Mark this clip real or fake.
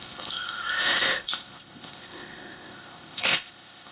fake